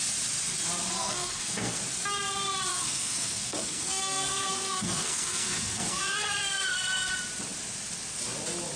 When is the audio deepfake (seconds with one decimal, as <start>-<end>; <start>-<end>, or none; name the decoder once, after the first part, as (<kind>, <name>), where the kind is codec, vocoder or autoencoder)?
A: 1.0-1.8 (codec, SNAC); 2.7-7.1